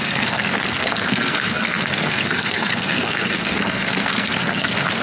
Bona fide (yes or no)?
no